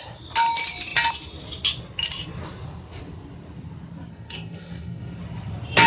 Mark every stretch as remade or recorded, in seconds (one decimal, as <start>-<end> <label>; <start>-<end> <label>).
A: 0.0-4.1 recorded; 4.1-5.2 remade; 5.2-5.9 recorded